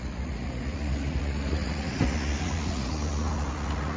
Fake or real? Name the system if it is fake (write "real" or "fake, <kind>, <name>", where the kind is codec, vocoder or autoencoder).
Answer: fake, vocoder, Vocos